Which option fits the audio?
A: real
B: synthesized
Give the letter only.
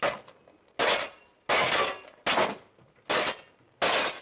A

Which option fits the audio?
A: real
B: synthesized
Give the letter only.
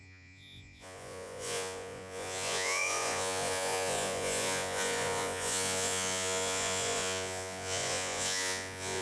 B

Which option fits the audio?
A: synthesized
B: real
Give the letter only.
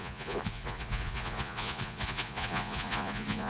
A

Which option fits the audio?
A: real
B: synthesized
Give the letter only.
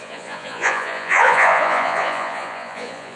B